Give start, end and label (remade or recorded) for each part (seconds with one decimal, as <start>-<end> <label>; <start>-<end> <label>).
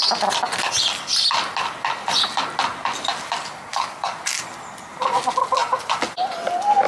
0.0-3.7 recorded; 3.7-4.2 remade; 4.2-6.9 recorded